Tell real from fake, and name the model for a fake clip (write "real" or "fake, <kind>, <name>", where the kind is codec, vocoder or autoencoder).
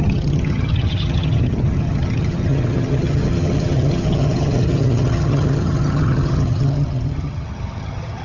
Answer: fake, vocoder, HiFi-GAN